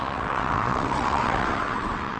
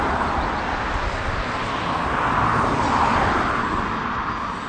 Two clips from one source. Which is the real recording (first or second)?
second